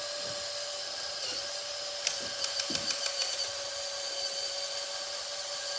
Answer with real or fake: real